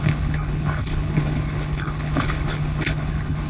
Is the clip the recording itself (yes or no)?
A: no